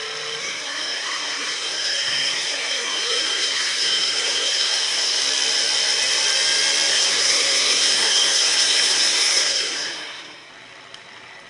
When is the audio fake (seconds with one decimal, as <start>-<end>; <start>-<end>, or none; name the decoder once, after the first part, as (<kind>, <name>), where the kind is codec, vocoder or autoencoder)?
0.4-5.2 (codec, SNAC); 6.9-10.5